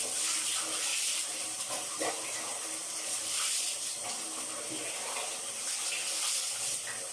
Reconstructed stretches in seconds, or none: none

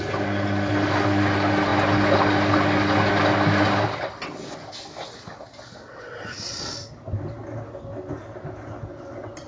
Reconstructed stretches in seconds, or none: none